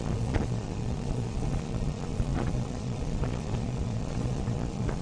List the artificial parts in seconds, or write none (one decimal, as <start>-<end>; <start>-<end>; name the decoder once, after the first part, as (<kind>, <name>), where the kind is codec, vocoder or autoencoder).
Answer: 0.0-5.0 (vocoder, Vocos)